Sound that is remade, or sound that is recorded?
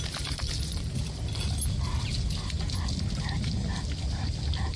recorded